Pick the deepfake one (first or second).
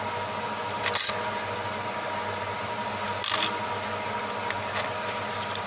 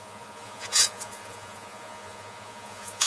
second